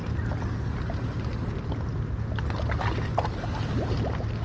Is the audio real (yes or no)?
yes